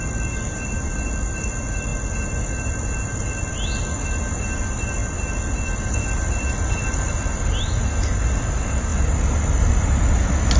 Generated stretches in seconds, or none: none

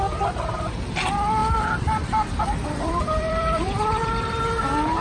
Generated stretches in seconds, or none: 1.4-4.4 (vocoder, BigVGAN v2)